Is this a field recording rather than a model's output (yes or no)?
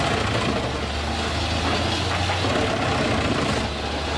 yes